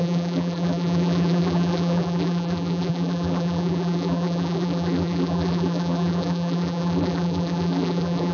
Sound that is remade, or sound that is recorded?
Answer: remade